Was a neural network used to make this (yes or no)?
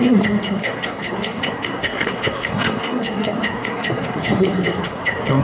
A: yes